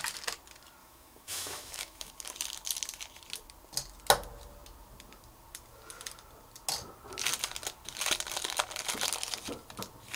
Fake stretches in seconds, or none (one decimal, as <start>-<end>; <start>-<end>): 0.8-2.1